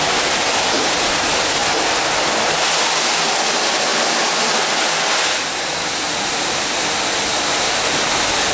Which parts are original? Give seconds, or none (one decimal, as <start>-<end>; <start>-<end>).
0.0-8.5